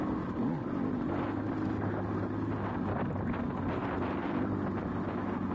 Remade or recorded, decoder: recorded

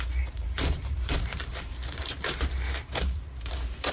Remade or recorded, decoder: remade, vocoder, BigVGAN v2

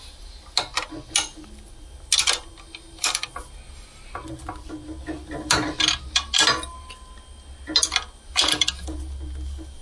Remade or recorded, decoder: recorded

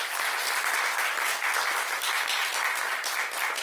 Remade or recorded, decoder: recorded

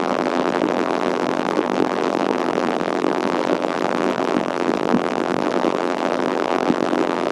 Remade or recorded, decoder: remade, vocoder, BigVGAN v2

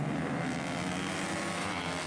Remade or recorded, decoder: remade, vocoder, BigVGAN v2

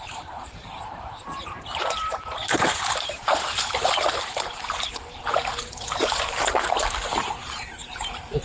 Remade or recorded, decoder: remade, vocoder, BigVGAN v2